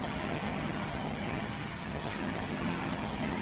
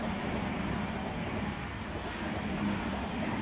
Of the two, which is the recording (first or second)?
second